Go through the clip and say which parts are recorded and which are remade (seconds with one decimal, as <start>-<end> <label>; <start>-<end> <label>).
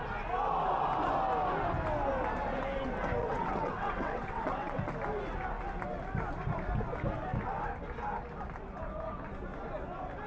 0.0-3.2 recorded; 3.2-4.8 remade; 4.8-10.3 recorded